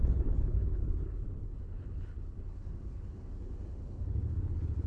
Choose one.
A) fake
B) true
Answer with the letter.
A